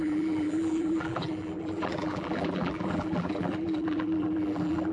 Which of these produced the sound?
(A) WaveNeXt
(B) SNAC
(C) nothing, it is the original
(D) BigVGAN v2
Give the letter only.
D